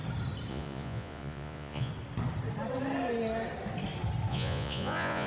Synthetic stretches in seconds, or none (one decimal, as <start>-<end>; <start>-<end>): 0.5-1.9; 4.3-5.3